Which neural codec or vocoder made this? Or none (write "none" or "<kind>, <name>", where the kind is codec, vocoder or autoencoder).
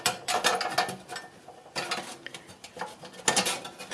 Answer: none